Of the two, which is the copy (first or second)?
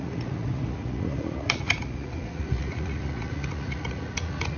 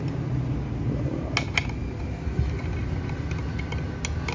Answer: first